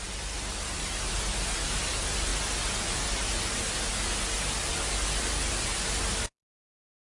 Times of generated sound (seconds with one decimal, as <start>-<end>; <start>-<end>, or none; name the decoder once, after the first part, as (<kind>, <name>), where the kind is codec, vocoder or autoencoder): none